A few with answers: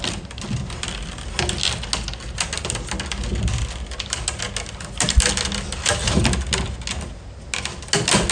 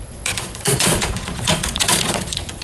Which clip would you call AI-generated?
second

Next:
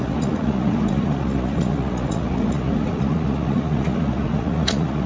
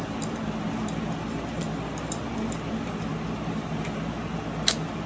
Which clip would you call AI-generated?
first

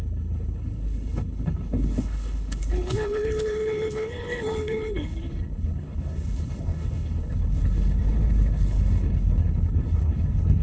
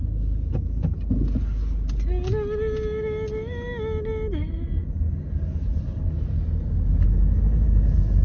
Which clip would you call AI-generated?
first